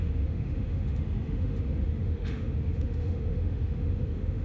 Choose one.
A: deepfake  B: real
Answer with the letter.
A